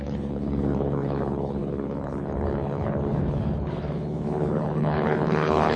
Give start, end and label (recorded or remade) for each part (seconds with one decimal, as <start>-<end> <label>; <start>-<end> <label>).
0.0-5.8 remade